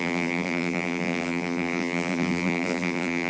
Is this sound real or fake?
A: fake